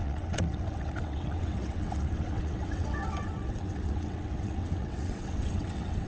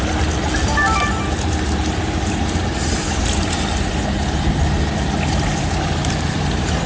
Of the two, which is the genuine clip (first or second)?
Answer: second